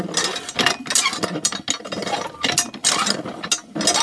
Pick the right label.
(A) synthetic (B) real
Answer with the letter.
B